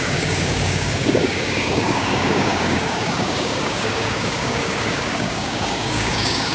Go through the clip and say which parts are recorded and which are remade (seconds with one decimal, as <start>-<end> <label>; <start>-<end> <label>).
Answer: 0.0-6.5 remade